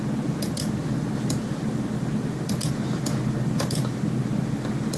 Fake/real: real